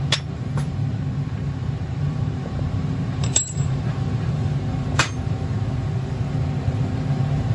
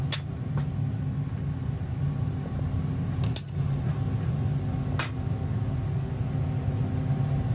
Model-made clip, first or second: first